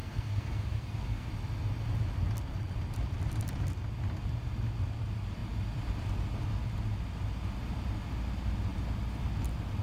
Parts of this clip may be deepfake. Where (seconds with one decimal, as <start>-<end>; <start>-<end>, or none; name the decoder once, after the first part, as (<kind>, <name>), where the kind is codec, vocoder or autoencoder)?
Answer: 0.0-1.3 (codec, SNAC)